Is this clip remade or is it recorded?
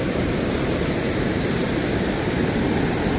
remade